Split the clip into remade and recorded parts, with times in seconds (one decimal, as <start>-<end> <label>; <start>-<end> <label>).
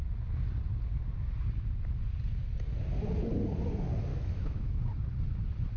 0.0-4.1 recorded; 4.1-4.8 remade; 4.8-5.8 recorded